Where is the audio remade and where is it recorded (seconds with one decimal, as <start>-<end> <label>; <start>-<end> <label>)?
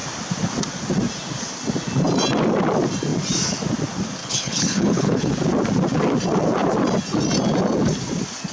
0.0-4.2 recorded; 4.2-5.3 remade; 5.3-8.5 recorded